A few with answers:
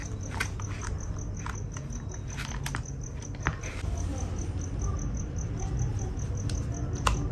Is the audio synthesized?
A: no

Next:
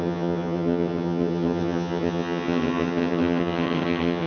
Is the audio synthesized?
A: yes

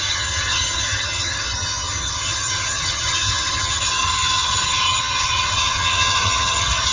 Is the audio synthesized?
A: yes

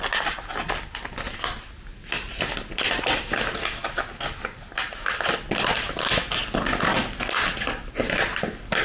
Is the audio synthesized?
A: no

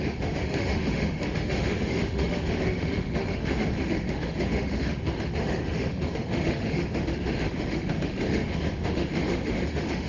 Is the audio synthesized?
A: yes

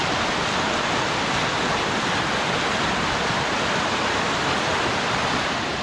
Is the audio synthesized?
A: yes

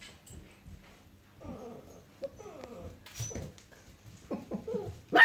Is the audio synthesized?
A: no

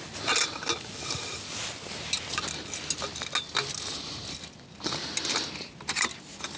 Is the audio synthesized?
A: no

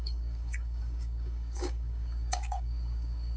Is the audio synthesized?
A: yes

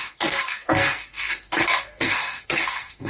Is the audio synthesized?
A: yes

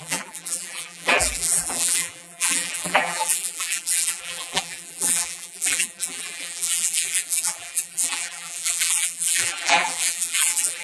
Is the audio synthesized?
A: yes